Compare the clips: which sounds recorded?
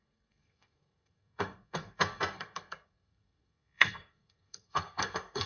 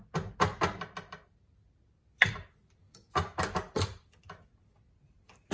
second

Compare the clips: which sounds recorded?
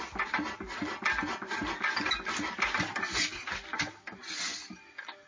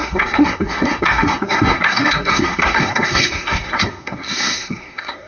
first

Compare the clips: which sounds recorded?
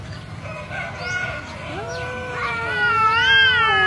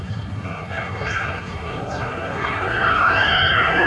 first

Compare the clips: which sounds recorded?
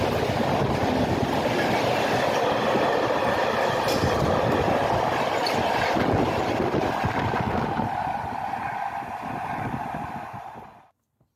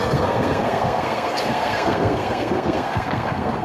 first